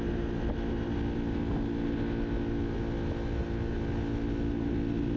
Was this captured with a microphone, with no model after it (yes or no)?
yes